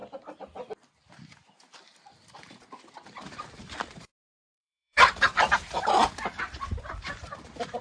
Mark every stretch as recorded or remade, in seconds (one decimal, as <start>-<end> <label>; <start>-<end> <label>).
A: 0.0-1.4 recorded; 1.4-7.8 remade